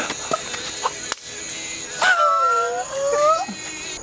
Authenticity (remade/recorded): recorded